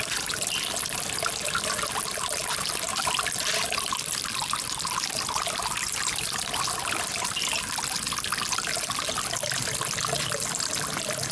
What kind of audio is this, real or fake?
real